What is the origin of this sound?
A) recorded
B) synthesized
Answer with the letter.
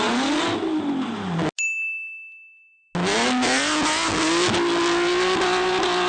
A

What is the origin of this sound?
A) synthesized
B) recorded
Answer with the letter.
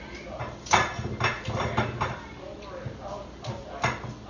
B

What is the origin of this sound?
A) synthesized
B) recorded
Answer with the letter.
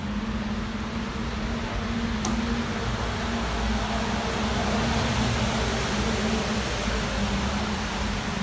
B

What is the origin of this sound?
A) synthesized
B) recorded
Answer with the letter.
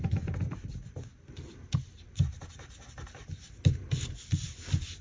B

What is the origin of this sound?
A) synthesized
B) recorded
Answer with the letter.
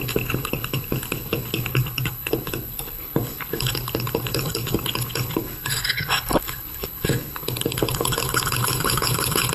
A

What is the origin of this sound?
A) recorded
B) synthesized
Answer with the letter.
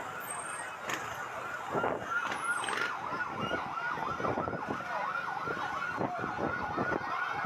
A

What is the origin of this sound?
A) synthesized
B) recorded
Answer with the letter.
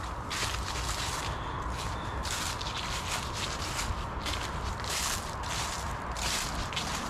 B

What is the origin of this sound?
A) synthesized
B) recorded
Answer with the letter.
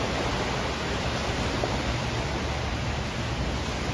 B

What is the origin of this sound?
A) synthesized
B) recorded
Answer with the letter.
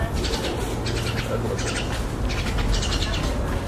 B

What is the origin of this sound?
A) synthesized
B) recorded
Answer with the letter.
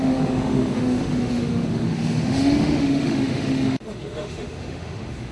A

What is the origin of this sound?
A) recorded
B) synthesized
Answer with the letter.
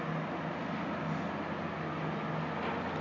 A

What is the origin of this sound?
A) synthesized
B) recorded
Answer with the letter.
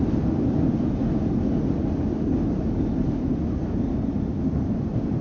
B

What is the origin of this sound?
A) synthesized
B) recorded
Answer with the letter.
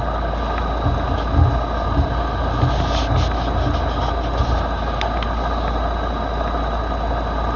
B